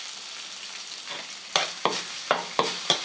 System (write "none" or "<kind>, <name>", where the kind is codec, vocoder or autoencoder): none